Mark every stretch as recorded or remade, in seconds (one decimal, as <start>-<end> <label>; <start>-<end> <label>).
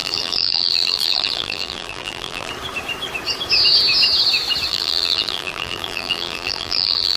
0.0-2.5 remade; 2.5-4.7 recorded; 4.7-7.2 remade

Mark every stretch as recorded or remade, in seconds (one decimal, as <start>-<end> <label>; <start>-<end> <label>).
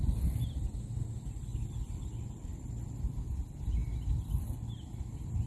0.0-1.5 recorded; 1.5-3.2 remade; 3.2-5.5 recorded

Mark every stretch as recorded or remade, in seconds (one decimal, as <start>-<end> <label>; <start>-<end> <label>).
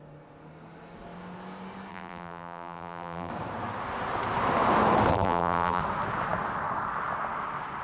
0.0-1.9 recorded; 1.9-3.3 remade; 3.3-5.1 recorded; 5.1-5.8 remade; 5.8-7.8 recorded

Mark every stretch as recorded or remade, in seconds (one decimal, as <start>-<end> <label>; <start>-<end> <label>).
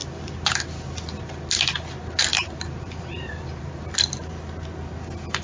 0.0-2.3 recorded; 2.3-4.0 remade; 4.0-5.4 recorded